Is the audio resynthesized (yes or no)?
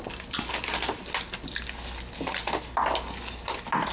no